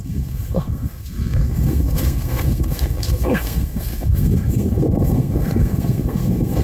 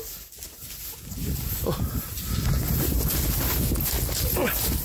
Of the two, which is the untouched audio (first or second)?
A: second